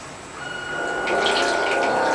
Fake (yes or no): no